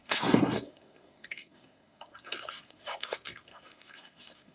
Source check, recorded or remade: remade